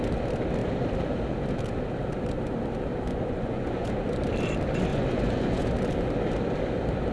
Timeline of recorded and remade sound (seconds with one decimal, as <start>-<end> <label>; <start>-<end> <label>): 0.0-3.1 recorded; 3.1-3.9 remade; 3.9-4.9 recorded; 4.9-5.7 remade; 5.7-7.1 recorded